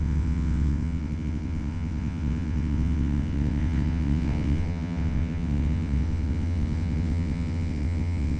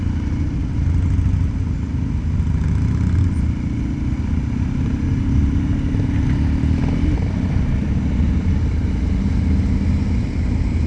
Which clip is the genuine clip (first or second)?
second